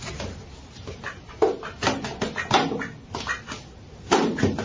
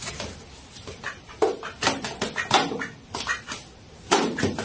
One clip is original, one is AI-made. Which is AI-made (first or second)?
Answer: second